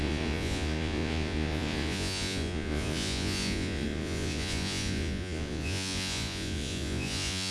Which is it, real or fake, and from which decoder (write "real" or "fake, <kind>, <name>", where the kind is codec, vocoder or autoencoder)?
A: fake, vocoder, Vocos